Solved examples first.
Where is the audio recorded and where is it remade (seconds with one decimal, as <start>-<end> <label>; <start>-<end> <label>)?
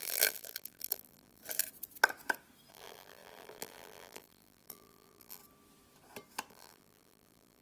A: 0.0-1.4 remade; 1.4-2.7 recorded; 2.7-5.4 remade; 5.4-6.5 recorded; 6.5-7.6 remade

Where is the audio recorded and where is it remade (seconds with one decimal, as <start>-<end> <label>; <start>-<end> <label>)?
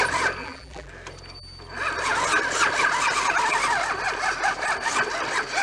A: 0.0-0.4 recorded; 0.4-0.9 remade; 0.9-5.6 recorded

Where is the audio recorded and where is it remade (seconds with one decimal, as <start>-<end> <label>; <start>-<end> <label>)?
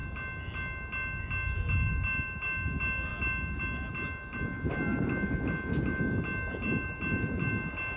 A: 0.0-8.0 recorded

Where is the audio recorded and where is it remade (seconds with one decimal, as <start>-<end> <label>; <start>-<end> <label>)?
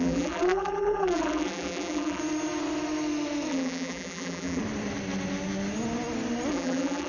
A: 0.0-2.2 remade; 2.2-3.5 recorded; 3.5-4.6 remade; 4.6-6.5 recorded; 6.5-7.1 remade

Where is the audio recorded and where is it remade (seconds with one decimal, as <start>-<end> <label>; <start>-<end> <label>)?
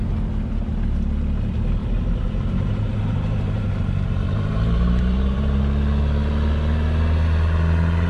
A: 0.0-1.8 recorded; 1.8-5.6 remade; 5.6-8.1 recorded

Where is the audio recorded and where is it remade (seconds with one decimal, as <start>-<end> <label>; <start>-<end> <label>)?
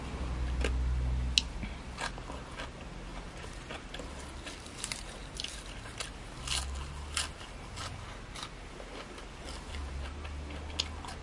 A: 0.0-3.1 recorded; 3.1-3.9 remade; 3.9-5.2 recorded; 5.2-6.4 remade; 6.4-11.2 recorded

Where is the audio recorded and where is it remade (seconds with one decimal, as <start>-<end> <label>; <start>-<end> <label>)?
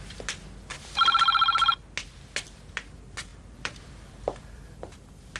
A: 0.0-0.7 recorded; 0.7-1.7 remade; 1.7-3.3 recorded; 3.3-4.8 remade; 4.8-5.4 recorded